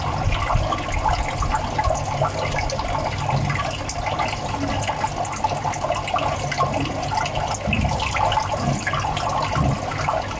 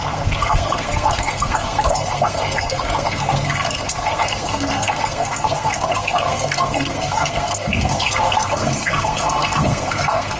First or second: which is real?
first